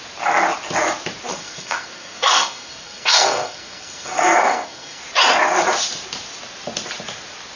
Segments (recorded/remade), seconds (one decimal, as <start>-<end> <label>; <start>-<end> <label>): 0.0-1.3 recorded; 1.3-5.0 remade; 5.0-7.6 recorded